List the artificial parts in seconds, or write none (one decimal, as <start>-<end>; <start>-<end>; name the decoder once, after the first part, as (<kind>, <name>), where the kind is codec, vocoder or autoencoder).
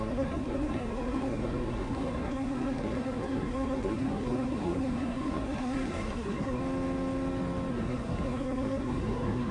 0.0-6.6 (codec, SNAC); 7.7-9.5